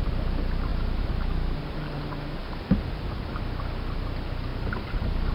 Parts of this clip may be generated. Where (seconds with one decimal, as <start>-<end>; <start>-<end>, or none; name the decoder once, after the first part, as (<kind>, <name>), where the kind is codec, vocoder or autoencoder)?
none

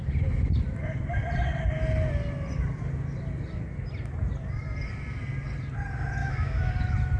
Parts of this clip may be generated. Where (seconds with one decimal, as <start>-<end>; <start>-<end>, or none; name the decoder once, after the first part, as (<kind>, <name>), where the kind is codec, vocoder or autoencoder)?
6.2-6.7 (autoencoder, DAC-VAE)

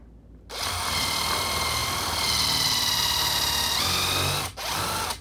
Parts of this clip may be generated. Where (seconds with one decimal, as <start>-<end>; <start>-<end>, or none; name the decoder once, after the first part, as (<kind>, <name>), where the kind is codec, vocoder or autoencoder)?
none